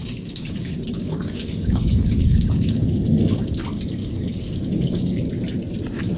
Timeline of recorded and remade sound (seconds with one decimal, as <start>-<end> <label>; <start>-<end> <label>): 0.0-3.0 remade; 3.0-4.0 recorded; 4.0-5.3 remade; 5.3-6.2 recorded